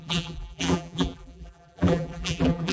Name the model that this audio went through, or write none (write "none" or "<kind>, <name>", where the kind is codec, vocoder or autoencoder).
vocoder, BigVGAN v2